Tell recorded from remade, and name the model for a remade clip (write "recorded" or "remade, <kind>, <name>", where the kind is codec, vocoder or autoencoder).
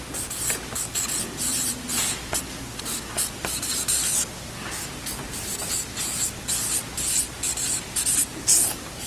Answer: recorded